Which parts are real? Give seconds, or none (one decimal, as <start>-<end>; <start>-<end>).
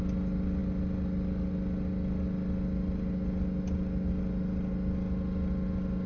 0.0-6.1